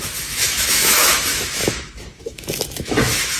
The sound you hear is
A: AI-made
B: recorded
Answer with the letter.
A